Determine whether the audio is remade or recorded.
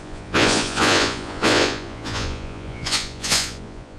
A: remade